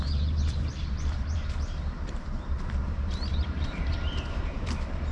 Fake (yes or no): yes